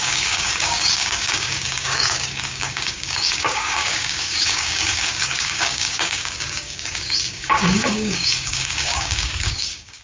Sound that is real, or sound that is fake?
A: fake